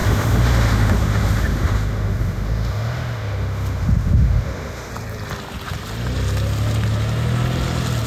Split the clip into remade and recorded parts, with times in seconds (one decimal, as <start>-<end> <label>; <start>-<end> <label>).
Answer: 0.0-4.9 remade; 4.9-8.1 recorded